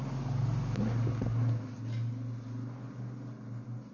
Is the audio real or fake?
real